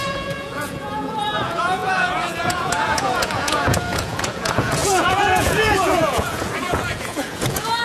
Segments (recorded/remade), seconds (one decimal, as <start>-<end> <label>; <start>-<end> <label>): 0.0-7.8 remade